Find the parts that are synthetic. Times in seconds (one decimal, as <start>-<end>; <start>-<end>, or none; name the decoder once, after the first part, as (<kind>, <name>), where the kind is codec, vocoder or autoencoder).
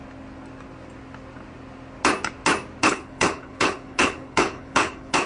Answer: 2.8-5.3 (codec, HILCodec)